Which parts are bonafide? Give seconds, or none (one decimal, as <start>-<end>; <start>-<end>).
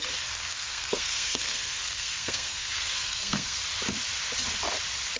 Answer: 0.0-0.5; 3.6-5.2